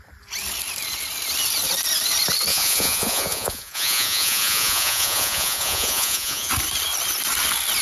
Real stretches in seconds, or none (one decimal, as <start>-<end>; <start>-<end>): 0.0-2.5; 6.5-7.8